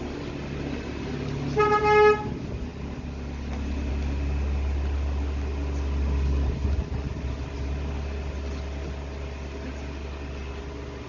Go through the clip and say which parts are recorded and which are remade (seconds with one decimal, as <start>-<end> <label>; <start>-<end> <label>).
0.0-11.1 recorded